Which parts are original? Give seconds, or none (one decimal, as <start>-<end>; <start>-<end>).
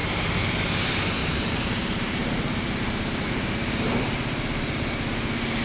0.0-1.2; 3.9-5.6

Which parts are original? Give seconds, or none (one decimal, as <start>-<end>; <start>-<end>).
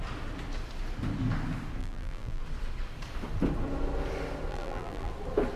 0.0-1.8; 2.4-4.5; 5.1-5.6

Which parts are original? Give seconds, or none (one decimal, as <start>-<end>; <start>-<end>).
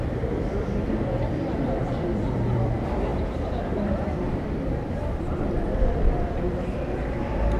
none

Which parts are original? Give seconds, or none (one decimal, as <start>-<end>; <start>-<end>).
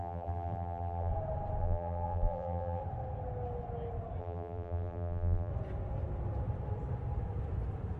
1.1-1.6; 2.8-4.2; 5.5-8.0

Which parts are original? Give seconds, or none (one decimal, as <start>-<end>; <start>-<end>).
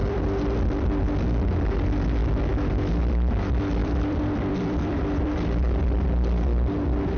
1.0-3.8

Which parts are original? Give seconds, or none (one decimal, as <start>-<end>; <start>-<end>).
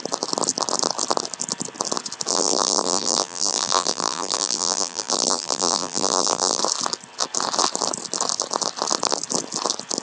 0.0-2.3; 6.6-10.0